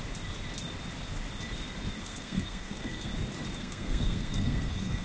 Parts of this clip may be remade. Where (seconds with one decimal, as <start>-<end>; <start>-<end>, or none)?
2.0-3.1; 3.6-5.0